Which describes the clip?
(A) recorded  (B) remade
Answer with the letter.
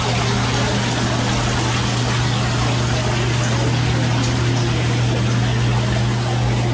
A